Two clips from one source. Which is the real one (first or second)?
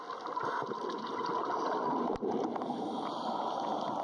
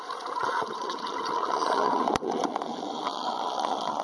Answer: first